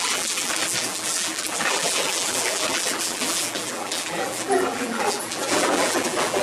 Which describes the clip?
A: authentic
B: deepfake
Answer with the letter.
B